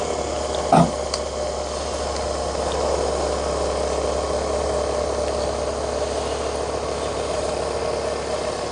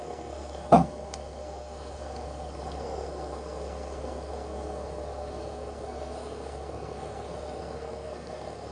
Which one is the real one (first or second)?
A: first